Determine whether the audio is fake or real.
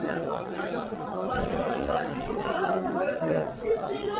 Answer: fake